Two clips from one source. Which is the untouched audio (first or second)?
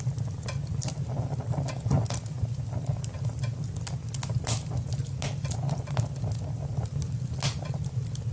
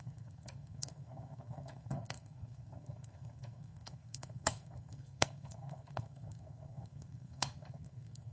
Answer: first